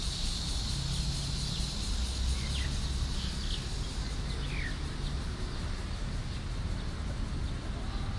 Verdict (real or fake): real